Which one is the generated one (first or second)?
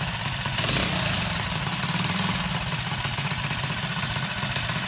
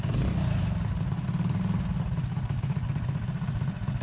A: first